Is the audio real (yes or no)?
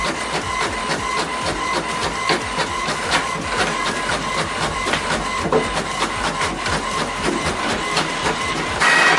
no